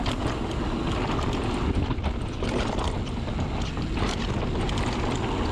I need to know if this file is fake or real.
real